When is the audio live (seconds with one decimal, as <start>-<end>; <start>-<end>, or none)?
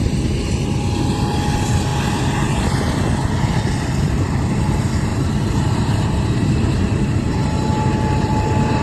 0.0-5.1